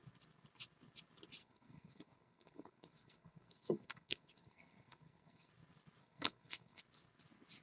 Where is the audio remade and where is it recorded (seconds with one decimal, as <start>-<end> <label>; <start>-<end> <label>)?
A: 0.0-1.4 recorded; 1.4-5.5 remade; 5.5-6.0 recorded; 6.0-6.8 remade; 6.8-7.6 recorded